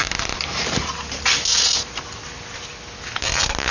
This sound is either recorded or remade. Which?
recorded